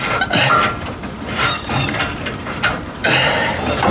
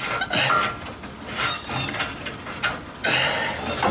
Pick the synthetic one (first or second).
first